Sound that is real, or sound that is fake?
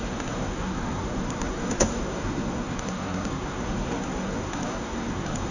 fake